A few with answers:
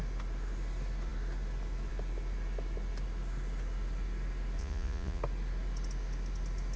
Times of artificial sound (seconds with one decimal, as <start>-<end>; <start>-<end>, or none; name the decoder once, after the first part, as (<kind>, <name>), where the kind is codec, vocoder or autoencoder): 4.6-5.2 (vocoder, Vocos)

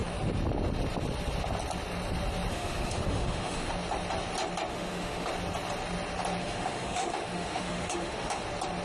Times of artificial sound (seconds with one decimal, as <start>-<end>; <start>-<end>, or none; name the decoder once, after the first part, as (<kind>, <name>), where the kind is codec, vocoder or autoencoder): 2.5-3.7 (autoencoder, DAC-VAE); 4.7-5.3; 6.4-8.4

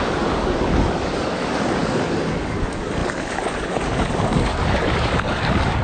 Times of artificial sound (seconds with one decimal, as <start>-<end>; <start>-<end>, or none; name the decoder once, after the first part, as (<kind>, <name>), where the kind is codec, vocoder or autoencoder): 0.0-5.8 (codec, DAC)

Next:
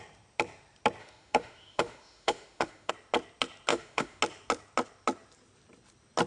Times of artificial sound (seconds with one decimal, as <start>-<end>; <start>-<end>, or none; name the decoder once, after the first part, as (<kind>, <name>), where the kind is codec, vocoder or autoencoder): 1.0-2.9 (autoencoder, DAC-VAE); 3.7-4.2

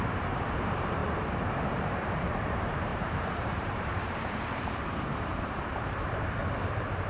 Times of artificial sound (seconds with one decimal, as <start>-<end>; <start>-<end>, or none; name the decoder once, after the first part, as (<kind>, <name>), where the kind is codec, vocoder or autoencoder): 0.0-1.0 (vocoder, BigVGAN v2); 1.7-6.4

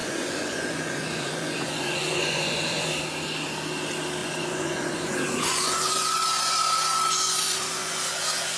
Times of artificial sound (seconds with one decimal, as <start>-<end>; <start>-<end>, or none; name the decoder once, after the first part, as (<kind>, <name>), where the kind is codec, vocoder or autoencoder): 0.0-2.9 (vocoder, Vocos); 4.2-8.6